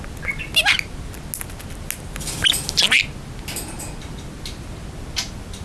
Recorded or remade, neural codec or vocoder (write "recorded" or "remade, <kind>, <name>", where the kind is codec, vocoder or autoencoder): recorded